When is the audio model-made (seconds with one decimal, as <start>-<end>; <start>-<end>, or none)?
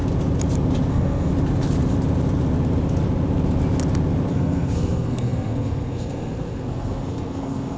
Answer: 0.9-1.3; 4.3-7.8